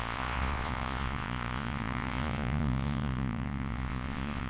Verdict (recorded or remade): remade